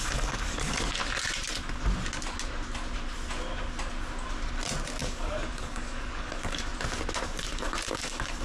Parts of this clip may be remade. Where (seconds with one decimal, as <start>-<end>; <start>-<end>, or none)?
0.0-1.0; 5.0-6.7; 7.2-8.4